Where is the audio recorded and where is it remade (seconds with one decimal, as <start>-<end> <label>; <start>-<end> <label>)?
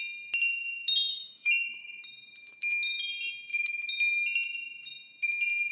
0.0-1.1 recorded; 1.1-2.0 remade; 2.0-5.7 recorded